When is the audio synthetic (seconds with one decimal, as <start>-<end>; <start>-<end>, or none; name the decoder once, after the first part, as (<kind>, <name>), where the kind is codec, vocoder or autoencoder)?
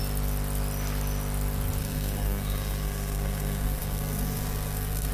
1.8-5.1 (codec, SNAC)